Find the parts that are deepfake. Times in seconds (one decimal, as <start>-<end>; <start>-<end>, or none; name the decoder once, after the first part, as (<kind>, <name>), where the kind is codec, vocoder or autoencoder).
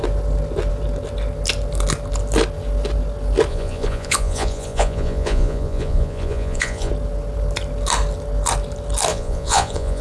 3.5-6.9 (vocoder, Vocos); 9.1-10.0